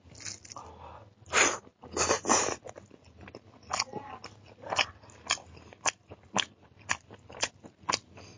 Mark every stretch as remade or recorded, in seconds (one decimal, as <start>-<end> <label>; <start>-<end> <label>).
0.0-8.4 recorded

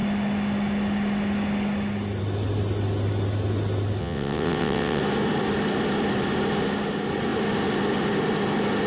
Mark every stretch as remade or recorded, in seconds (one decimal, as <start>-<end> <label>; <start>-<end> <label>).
0.0-4.0 recorded; 4.0-5.0 remade; 5.0-8.9 recorded

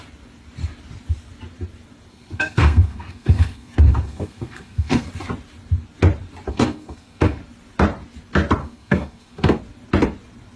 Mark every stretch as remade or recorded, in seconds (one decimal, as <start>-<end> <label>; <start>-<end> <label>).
0.0-2.1 recorded; 2.1-5.1 remade; 5.1-6.5 recorded; 6.5-7.4 remade; 7.4-8.6 recorded; 8.6-9.6 remade; 9.6-10.6 recorded

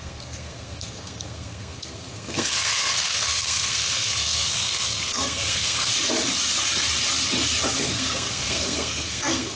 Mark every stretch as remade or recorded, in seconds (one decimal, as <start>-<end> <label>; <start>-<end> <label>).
0.0-5.9 remade; 5.9-7.8 recorded; 7.8-9.6 remade

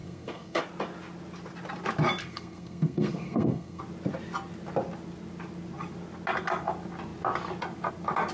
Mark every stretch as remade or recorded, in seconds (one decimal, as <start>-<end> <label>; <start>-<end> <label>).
0.0-0.6 remade; 0.6-2.2 recorded; 2.2-3.8 remade; 3.8-8.3 recorded

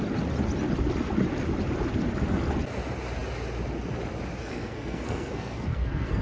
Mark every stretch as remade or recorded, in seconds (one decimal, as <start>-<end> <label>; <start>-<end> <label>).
0.0-4.4 recorded; 4.4-6.2 remade